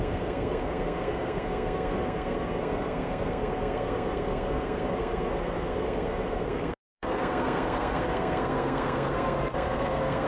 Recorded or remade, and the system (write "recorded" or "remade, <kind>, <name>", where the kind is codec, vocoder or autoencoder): remade, codec, SNAC